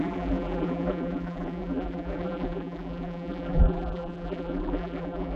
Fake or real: fake